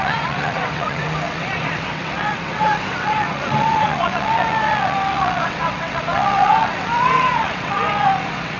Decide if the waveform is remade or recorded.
remade